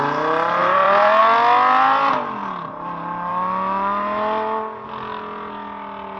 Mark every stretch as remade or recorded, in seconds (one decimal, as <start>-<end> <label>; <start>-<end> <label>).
0.0-0.6 recorded; 0.6-1.2 remade; 1.2-6.2 recorded